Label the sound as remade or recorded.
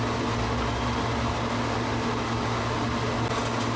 recorded